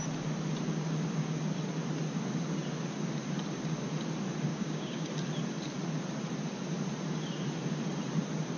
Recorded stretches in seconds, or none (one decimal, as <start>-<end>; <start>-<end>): 0.0-4.5; 5.1-8.6